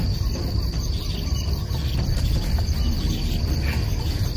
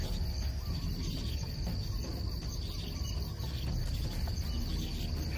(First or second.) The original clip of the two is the second